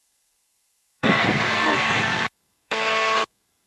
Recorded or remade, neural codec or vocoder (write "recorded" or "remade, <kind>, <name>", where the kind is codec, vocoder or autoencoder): remade, codec, SNAC